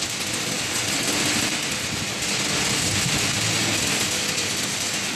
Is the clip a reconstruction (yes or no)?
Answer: no